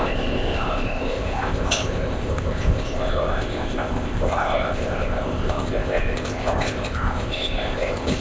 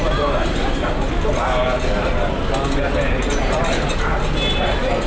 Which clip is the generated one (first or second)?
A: first